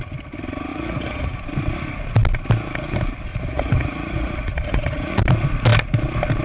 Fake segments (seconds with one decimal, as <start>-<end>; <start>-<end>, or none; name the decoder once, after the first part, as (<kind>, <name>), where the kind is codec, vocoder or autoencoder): 0.7-1.4 (vocoder, Vocos); 3.3-5.2